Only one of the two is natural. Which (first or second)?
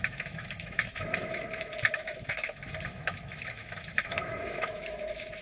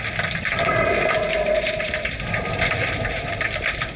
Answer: second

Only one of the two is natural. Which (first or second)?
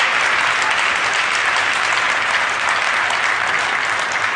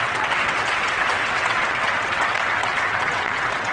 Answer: first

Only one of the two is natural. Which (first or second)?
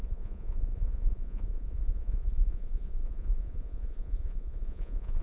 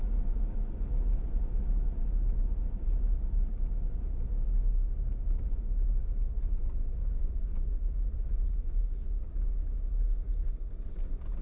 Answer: second